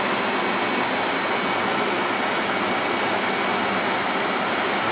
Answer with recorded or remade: recorded